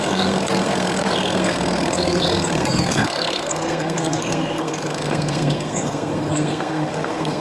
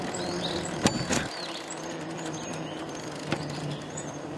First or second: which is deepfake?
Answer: first